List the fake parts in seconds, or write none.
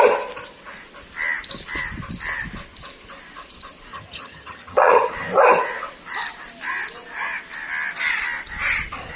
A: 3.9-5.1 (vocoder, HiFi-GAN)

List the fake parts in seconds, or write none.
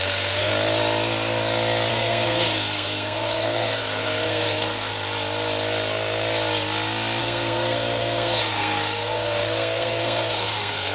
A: 0.0-0.5 (codec, SNAC); 1.9-4.9; 7.2-10.9